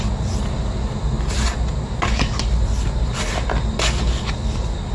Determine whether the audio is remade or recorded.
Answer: recorded